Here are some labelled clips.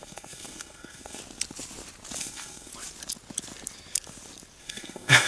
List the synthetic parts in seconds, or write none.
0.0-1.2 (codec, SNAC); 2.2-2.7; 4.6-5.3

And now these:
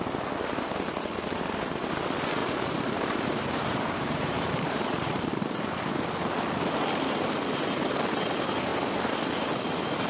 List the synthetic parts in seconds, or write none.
2.4-5.9 (vocoder, BigVGAN v2)

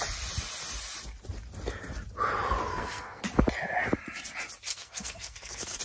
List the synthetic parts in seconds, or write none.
2.7-3.2 (codec, SNAC); 4.7-5.8